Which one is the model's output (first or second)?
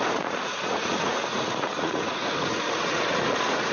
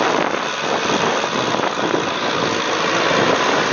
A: first